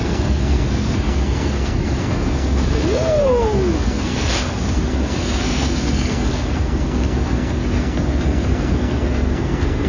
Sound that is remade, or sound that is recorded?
remade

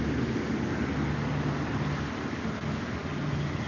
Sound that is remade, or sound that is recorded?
recorded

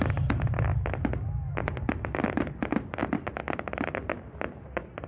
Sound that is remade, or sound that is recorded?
recorded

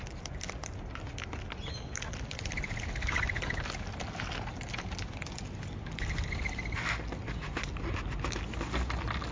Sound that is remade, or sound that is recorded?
recorded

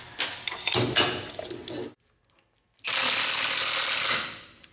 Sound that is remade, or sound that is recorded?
recorded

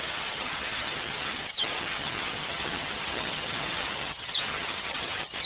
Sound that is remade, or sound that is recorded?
remade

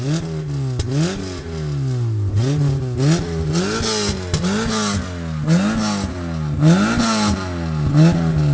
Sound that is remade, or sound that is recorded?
recorded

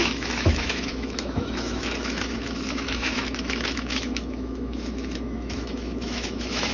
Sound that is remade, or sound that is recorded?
remade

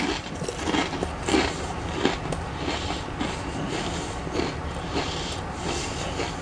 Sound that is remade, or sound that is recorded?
recorded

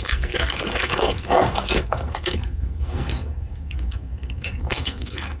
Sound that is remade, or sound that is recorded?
remade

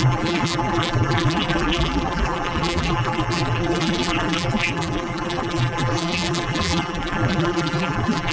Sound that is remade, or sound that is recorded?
remade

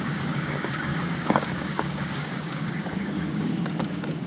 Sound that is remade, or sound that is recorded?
remade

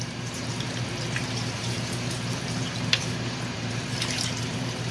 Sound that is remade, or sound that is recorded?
remade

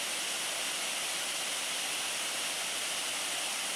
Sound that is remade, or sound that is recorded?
recorded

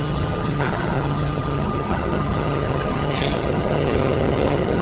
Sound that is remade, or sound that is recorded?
remade